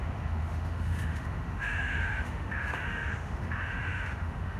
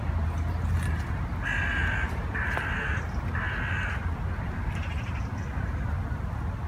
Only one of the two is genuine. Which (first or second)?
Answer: second